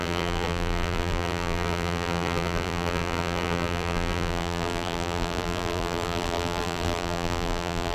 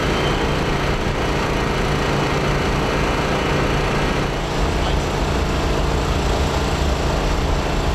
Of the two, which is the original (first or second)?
second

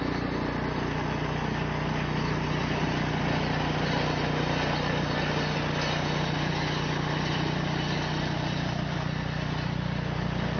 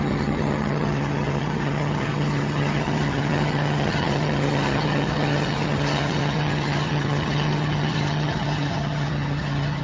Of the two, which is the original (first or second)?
first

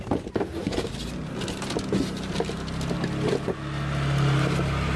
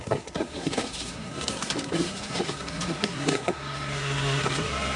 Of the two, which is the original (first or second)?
first